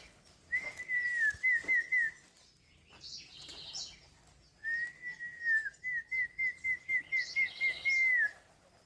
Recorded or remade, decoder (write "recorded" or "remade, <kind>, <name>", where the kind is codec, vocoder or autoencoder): recorded